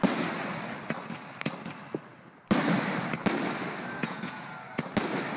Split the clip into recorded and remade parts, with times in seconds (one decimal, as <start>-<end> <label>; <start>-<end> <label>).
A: 0.0-4.0 recorded; 4.0-4.5 remade; 4.5-5.4 recorded